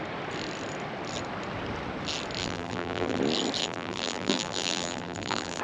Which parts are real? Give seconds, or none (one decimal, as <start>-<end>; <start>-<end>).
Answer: 0.0-2.4; 3.2-3.6